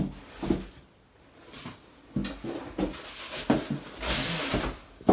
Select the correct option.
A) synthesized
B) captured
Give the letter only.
B